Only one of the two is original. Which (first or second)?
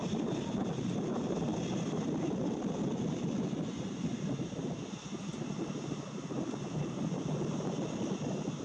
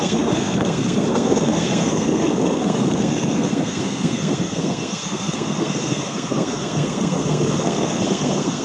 first